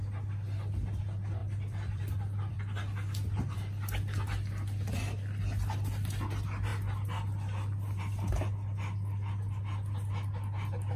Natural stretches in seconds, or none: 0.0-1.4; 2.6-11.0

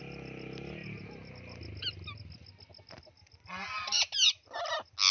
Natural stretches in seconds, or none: 0.0-5.1

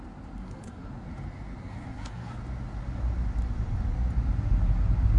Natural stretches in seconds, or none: 0.0-0.4; 0.9-1.6; 2.3-5.2